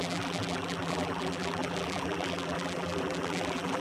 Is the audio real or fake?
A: fake